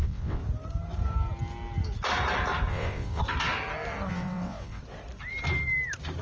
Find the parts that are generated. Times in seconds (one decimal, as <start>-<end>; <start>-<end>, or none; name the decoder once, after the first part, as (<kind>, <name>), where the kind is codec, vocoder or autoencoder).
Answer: 0.0-0.4 (vocoder, WaveNeXt); 2.7-3.2; 4.1-4.8

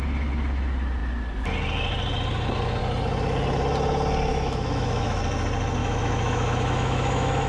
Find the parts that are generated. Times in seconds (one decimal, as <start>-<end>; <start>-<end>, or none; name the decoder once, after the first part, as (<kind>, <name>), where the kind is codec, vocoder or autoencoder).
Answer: 4.3-5.2 (autoencoder, DAC-VAE); 5.8-7.5

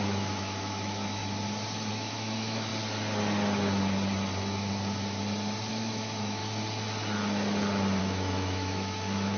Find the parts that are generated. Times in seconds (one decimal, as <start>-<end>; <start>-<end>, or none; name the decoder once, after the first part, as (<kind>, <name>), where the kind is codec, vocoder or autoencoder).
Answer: 0.0-1.2 (autoencoder, DAC-VAE); 1.9-2.7; 5.7-6.4; 8.0-9.4

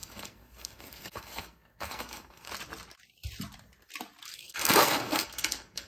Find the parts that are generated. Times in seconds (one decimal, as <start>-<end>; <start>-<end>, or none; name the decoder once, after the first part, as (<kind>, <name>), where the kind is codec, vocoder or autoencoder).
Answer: 0.0-2.5 (codec, SNAC); 4.3-5.9